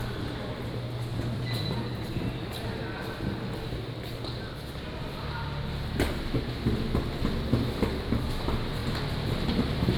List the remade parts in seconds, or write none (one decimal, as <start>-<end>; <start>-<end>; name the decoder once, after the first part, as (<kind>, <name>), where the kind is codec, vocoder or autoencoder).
1.1-2.3 (vocoder, BigVGAN v2); 8.8-9.3